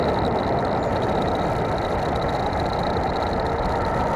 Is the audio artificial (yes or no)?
no